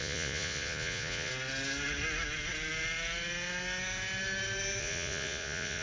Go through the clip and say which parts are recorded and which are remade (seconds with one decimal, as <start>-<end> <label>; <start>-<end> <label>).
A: 0.0-1.3 remade; 1.3-4.8 recorded; 4.8-5.8 remade